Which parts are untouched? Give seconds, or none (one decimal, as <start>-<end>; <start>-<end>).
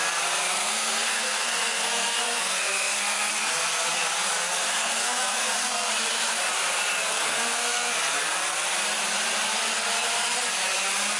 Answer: 0.0-0.5; 3.3-4.7; 5.9-7.1; 7.9-11.2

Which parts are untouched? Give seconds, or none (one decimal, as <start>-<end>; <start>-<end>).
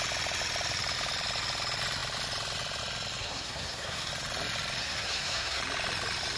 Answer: 0.0-3.2; 4.1-4.8; 5.6-6.4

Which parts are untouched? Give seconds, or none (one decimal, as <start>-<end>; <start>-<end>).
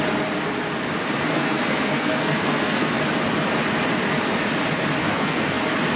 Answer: 0.0-1.3; 3.0-5.0; 5.6-6.0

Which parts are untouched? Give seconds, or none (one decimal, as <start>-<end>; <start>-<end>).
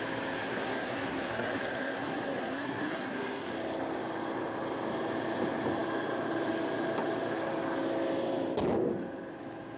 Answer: 0.0-0.4; 3.5-9.8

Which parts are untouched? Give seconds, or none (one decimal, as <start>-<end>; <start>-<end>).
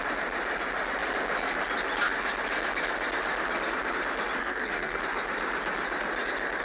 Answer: 0.0-4.4; 5.0-6.6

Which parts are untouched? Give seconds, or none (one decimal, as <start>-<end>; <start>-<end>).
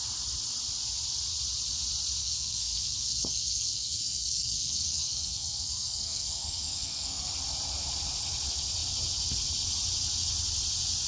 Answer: 0.0-2.2; 7.3-11.1